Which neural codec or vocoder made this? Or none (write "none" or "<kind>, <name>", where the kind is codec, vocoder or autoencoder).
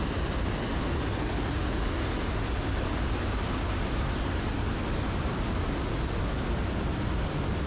none